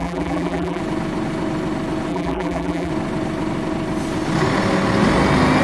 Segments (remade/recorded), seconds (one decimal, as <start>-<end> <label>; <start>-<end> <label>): 0.0-0.8 remade; 0.8-2.1 recorded; 2.1-2.9 remade; 2.9-5.6 recorded